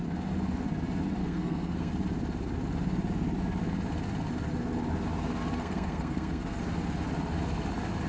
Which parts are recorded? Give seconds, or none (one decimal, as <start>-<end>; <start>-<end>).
0.0-1.2; 1.9-5.6; 6.6-8.1